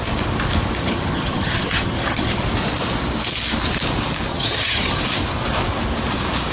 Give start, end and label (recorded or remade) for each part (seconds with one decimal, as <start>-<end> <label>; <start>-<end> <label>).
0.0-0.8 recorded; 0.8-2.4 remade; 2.4-4.3 recorded; 4.3-5.0 remade; 5.0-6.5 recorded